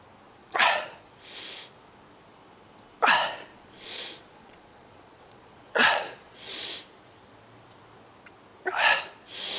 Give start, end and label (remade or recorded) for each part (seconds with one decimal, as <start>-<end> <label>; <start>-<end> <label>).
0.0-0.4 recorded; 0.4-1.2 remade; 1.2-3.5 recorded; 3.5-6.7 remade; 6.7-9.6 recorded